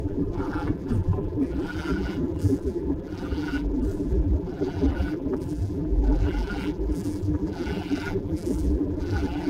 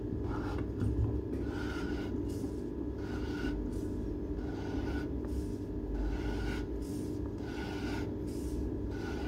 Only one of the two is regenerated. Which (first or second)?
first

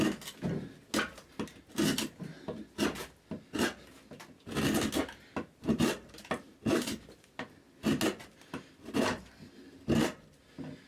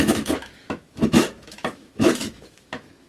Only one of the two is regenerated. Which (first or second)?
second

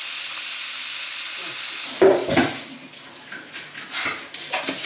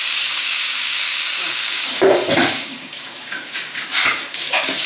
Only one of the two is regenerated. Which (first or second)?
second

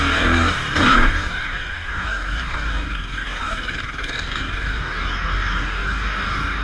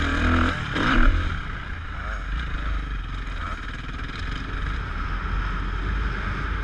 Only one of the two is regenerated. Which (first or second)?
first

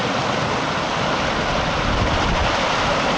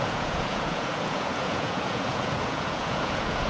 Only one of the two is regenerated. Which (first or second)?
second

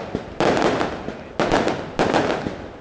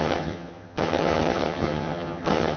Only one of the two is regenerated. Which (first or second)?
second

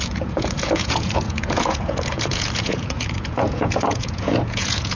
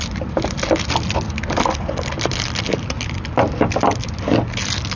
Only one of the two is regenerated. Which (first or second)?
first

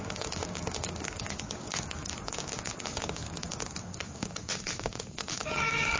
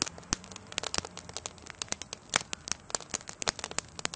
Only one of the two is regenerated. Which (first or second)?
first